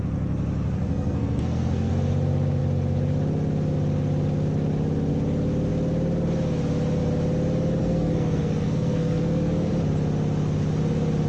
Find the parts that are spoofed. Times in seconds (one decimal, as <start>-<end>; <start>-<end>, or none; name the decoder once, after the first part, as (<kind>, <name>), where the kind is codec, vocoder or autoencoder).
0.9-1.9 (codec, SNAC); 7.8-9.7